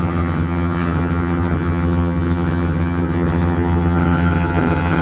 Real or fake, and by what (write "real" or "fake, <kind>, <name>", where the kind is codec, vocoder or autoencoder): fake, vocoder, HiFi-GAN